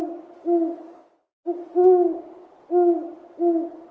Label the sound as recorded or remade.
recorded